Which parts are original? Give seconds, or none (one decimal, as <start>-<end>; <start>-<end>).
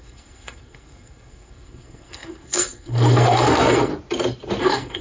3.9-4.6